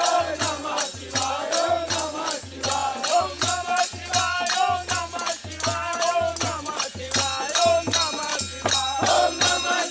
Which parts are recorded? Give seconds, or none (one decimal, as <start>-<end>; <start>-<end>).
0.0-9.9